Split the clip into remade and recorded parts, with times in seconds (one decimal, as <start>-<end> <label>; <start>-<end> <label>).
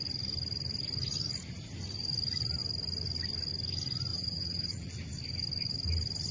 0.0-4.1 recorded; 4.1-4.9 remade; 4.9-6.3 recorded